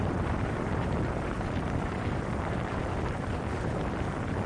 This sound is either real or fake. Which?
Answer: fake